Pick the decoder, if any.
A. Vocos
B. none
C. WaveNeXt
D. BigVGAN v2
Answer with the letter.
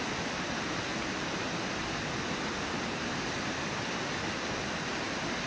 B